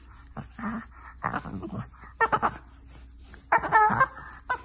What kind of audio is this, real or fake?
real